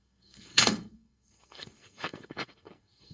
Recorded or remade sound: remade